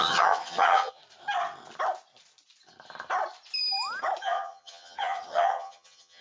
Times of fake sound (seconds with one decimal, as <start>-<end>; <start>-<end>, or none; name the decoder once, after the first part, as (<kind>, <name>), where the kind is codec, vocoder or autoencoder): 0.0-1.0 (vocoder, HiFi-GAN); 4.2-6.2